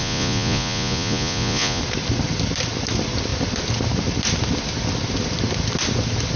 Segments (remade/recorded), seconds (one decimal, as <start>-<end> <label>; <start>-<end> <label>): 0.0-1.8 remade; 1.8-6.4 recorded